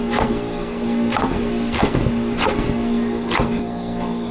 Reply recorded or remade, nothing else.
remade